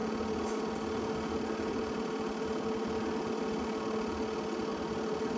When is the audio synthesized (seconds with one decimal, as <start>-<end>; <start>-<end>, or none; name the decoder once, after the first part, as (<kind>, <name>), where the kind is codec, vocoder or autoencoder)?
none